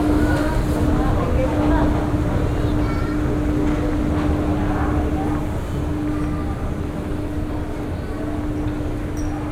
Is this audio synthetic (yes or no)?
no